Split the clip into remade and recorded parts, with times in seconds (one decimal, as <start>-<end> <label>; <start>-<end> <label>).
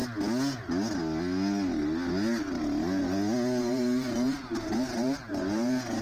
0.0-3.6 recorded; 3.6-6.0 remade